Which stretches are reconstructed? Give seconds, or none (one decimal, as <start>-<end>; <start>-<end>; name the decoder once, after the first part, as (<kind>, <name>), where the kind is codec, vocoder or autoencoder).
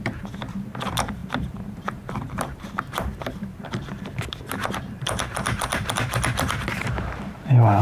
0.0-7.8 (vocoder, BigVGAN v2)